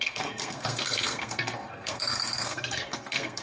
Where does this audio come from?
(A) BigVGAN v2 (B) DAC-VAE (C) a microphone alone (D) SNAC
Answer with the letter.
D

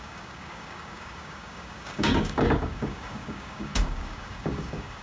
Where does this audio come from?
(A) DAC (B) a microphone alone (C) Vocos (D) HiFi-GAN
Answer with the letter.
A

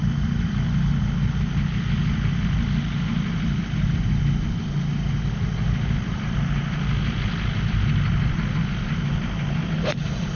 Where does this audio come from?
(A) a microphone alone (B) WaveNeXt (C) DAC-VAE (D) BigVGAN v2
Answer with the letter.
A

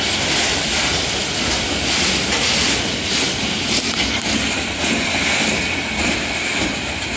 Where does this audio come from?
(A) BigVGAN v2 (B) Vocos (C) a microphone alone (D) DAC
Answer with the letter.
C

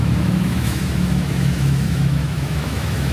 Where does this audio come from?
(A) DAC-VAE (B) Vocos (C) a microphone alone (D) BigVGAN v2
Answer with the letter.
A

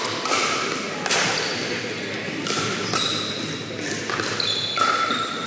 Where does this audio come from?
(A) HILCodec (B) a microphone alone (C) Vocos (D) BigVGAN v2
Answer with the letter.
B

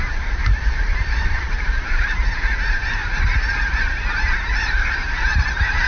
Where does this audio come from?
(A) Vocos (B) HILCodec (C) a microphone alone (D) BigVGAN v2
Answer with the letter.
D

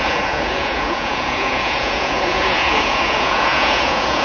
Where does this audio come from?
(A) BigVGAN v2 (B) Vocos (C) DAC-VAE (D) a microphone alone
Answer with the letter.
B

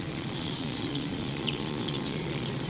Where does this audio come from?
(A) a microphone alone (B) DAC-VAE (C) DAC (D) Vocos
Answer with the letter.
D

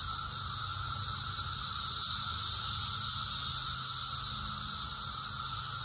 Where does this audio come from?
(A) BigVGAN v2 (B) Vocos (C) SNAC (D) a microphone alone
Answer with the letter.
D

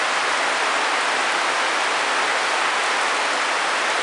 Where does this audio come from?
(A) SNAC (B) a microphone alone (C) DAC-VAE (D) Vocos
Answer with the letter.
B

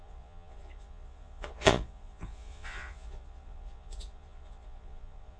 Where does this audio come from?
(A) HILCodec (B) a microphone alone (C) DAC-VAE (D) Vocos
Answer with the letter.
D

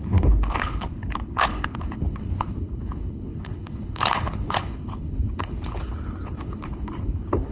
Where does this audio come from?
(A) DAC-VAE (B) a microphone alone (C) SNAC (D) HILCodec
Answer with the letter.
D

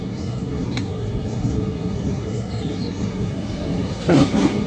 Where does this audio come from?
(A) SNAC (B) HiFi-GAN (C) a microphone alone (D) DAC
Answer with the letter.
A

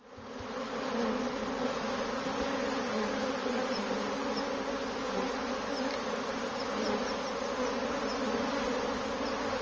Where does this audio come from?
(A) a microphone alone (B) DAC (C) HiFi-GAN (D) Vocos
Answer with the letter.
A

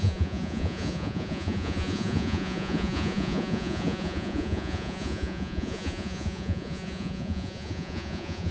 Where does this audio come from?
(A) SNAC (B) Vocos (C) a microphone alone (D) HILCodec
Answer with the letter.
B